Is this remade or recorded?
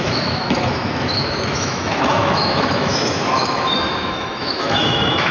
remade